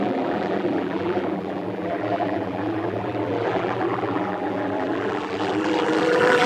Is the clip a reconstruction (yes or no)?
yes